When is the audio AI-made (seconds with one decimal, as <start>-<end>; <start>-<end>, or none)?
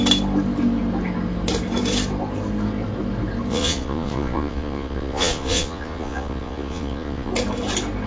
3.5-7.3